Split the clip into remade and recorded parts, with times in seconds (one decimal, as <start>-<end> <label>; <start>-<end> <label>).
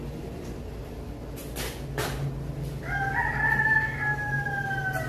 0.0-5.1 recorded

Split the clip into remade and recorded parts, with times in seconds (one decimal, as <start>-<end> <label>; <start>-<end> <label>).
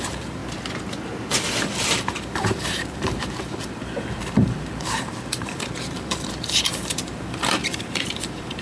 0.0-0.4 remade; 0.4-1.6 recorded; 1.6-8.6 remade